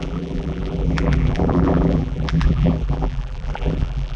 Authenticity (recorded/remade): remade